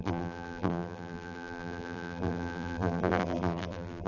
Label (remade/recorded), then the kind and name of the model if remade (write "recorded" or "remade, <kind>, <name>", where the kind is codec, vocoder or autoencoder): remade, vocoder, BigVGAN v2